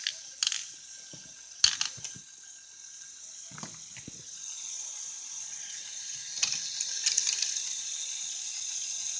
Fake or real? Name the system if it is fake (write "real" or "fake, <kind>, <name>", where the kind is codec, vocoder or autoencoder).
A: real